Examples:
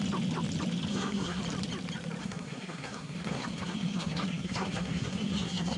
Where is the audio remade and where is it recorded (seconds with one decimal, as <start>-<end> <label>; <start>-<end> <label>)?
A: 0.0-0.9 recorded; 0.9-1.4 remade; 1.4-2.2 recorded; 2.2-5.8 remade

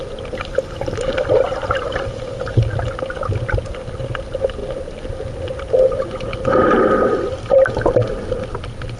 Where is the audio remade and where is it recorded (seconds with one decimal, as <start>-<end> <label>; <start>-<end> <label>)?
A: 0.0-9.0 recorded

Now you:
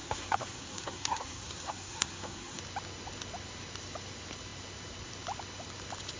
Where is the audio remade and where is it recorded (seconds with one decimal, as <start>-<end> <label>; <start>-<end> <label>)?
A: 0.0-2.6 remade; 2.6-6.2 recorded

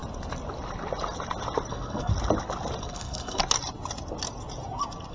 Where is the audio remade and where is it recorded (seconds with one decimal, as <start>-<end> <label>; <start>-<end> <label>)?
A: 0.0-1.7 recorded; 1.7-2.1 remade; 2.1-2.8 recorded; 2.8-3.4 remade; 3.4-5.1 recorded

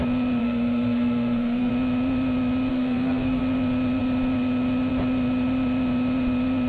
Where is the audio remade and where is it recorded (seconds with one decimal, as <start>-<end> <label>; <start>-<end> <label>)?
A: 0.0-0.4 recorded; 0.4-1.7 remade; 1.7-2.7 recorded; 2.7-3.4 remade; 3.4-6.7 recorded

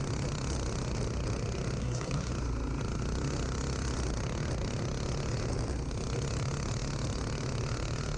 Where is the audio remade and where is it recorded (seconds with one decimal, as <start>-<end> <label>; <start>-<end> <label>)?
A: 0.0-1.8 recorded; 1.8-2.3 remade; 2.3-8.2 recorded